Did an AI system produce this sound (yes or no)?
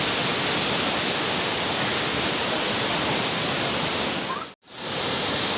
no